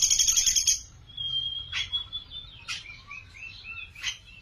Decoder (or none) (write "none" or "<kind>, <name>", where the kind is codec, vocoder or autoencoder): none